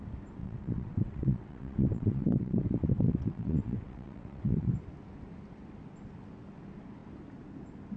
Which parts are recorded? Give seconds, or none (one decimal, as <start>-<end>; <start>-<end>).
0.0-0.4; 4.7-8.0